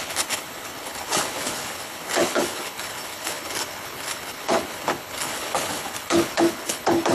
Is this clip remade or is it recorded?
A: remade